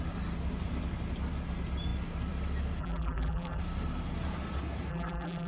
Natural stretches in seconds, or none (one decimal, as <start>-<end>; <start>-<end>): 0.0-2.8; 3.6-4.9